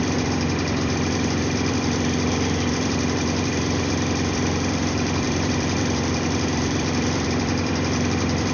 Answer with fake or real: fake